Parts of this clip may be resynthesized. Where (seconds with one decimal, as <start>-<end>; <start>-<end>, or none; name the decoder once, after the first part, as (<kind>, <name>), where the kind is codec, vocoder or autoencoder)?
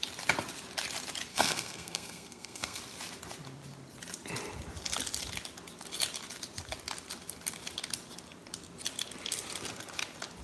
1.3-2.8 (codec, SNAC)